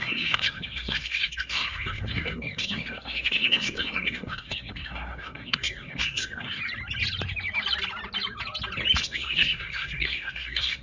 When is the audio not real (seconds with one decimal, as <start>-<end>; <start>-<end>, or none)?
0.0-6.6; 9.0-10.8